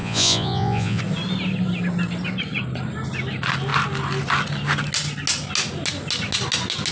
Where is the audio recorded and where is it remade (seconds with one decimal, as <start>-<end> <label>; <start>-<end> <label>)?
0.0-1.0 remade; 1.0-6.9 recorded